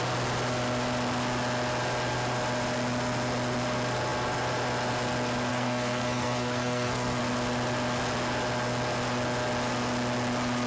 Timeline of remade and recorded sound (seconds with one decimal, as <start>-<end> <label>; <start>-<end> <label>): 0.0-5.5 recorded; 5.5-7.2 remade; 7.2-10.7 recorded

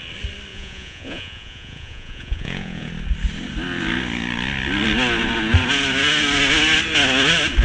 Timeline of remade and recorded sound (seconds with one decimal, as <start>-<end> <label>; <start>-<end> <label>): 0.0-0.5 recorded; 0.5-2.9 remade; 2.9-7.6 recorded

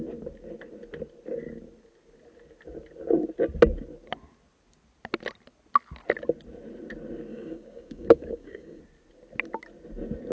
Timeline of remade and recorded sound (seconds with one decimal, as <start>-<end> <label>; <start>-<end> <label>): 0.0-7.3 recorded; 7.3-8.8 remade; 8.8-10.3 recorded